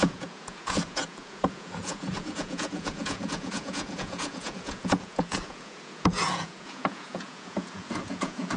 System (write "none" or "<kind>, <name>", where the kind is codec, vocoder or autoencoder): vocoder, Vocos